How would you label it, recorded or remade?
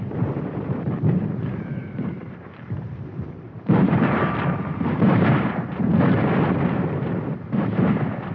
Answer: remade